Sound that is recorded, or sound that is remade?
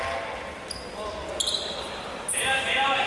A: recorded